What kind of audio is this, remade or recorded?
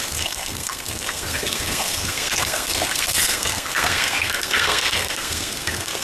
remade